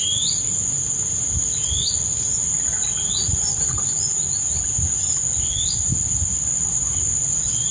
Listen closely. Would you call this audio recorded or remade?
remade